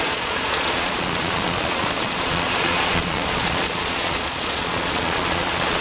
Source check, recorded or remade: remade